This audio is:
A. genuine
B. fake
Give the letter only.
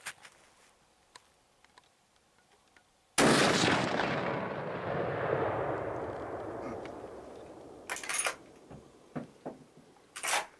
A